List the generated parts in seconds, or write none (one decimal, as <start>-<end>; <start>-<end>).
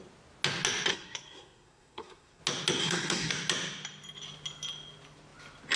0.9-2.4; 2.8-3.3